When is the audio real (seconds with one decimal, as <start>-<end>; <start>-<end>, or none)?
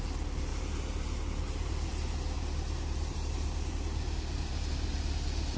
none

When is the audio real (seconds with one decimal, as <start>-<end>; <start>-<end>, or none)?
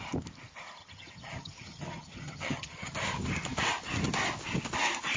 0.0-0.8; 2.9-5.2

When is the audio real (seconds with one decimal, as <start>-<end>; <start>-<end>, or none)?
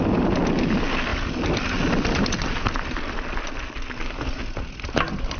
0.0-5.4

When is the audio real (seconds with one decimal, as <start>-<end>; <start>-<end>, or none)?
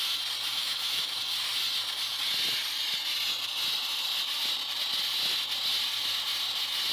0.0-0.5; 1.2-6.9